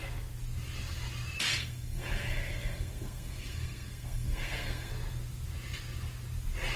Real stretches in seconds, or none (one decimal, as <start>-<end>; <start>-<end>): 0.0-1.5; 4.9-6.8